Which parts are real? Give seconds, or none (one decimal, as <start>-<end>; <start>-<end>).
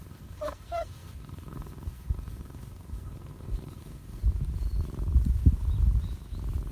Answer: 4.2-6.7